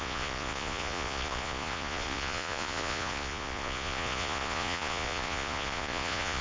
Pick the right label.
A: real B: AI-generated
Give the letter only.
B